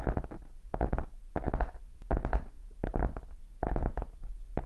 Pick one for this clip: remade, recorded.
recorded